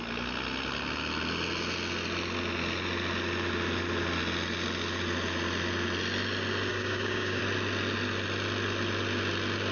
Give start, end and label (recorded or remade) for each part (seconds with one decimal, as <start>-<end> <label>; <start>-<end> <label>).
0.0-6.7 recorded; 6.7-7.4 remade; 7.4-9.7 recorded